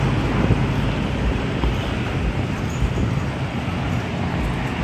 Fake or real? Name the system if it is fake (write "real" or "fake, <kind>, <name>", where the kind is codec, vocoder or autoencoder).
real